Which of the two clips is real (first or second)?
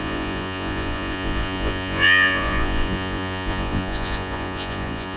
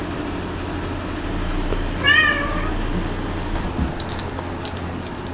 second